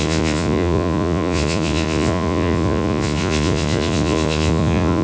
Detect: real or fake fake